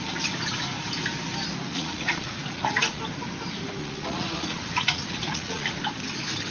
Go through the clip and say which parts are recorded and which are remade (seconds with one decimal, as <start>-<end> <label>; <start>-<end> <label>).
0.0-1.7 recorded; 1.7-3.0 remade; 3.0-3.8 recorded; 3.8-5.8 remade; 5.8-6.5 recorded